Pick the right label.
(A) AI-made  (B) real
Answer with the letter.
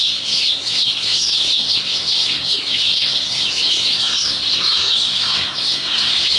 A